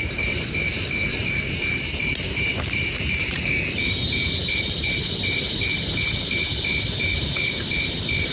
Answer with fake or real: fake